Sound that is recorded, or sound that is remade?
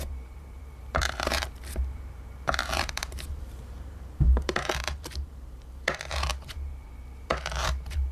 remade